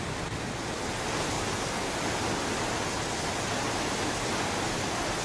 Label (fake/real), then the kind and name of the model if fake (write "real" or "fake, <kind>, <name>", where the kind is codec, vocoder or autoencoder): real